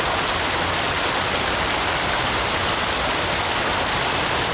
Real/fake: real